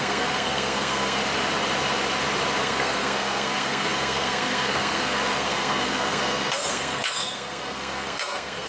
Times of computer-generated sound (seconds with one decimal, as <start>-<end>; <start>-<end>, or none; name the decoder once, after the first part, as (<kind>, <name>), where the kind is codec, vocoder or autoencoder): 0.0-1.2 (codec, SNAC); 2.6-8.7